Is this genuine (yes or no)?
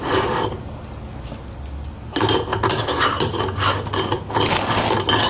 yes